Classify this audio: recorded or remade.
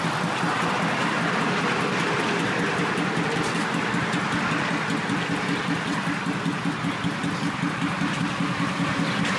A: recorded